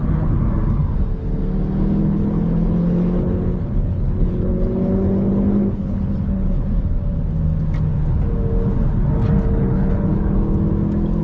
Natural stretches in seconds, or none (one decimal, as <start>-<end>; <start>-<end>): 0.4-2.0; 6.7-9.5; 10.2-11.2